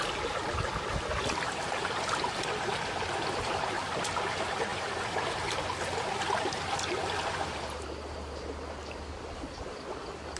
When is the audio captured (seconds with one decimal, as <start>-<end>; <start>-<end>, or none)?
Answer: 0.0-10.4